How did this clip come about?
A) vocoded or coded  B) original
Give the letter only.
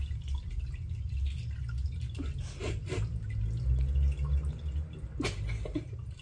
B